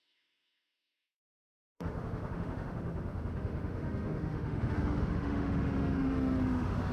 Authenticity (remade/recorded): remade